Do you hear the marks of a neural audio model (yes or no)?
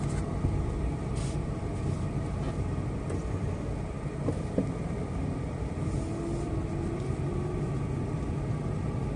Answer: no